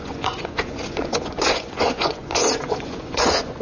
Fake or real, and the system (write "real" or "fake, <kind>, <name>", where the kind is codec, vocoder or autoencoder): fake, vocoder, Vocos